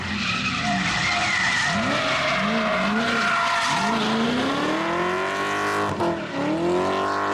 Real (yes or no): yes